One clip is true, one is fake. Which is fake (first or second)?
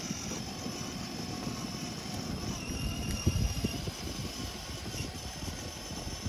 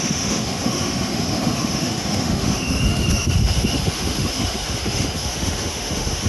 second